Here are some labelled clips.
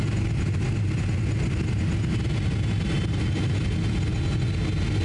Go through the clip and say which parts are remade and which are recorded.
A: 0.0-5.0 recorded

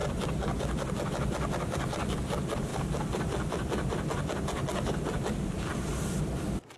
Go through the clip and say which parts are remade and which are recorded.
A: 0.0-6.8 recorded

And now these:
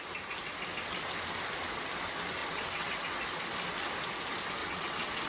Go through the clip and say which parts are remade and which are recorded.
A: 0.0-2.4 recorded; 2.4-3.0 remade; 3.0-4.6 recorded; 4.6-5.3 remade